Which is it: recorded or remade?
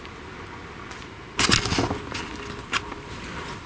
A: recorded